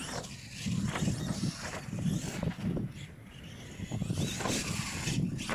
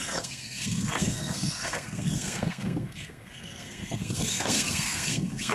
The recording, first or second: first